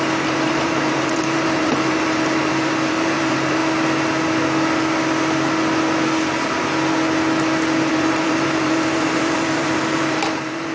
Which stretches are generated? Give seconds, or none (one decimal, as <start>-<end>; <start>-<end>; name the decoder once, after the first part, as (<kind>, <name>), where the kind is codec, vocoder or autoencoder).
0.0-3.6 (vocoder, BigVGAN v2); 7.9-10.7